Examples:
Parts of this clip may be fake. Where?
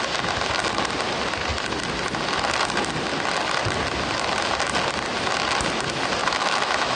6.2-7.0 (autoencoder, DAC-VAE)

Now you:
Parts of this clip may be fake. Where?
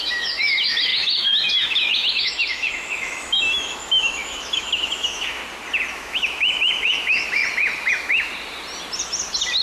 0.0-5.4 (autoencoder, DAC-VAE); 5.9-7.4; 7.9-8.3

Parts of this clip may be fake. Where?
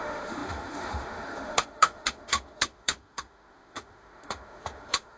0.0-5.2 (autoencoder, DAC-VAE)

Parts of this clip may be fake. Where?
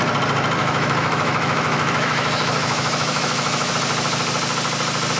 0.6-3.7 (autoencoder, DAC-VAE)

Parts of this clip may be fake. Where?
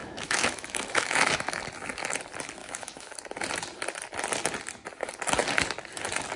0.0-1.6 (autoencoder, DAC-VAE); 2.6-3.1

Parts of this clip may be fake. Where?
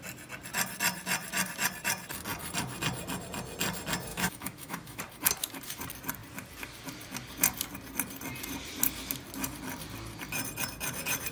4.1-5.0 (autoencoder, DAC-VAE)